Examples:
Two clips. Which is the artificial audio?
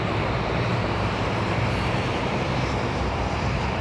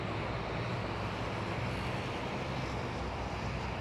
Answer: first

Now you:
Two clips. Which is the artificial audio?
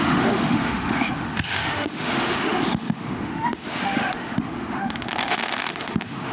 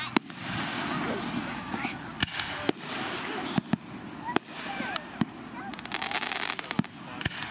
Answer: first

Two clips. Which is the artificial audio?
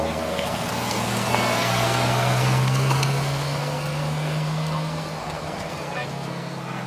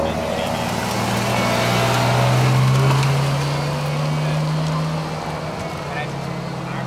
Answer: first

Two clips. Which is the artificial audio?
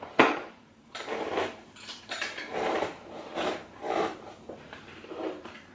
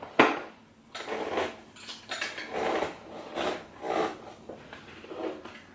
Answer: first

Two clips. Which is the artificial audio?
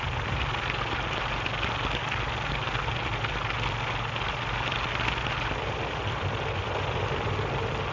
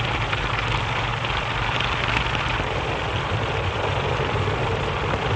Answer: second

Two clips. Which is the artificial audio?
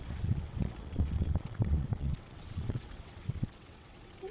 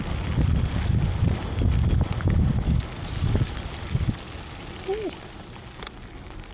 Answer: first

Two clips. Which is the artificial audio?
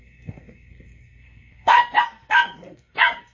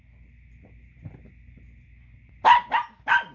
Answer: first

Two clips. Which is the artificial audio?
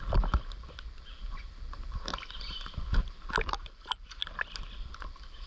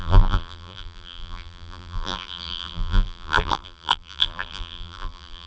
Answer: second